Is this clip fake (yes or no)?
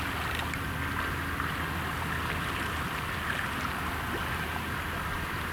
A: no